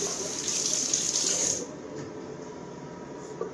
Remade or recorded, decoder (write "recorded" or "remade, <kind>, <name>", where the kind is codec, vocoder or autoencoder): recorded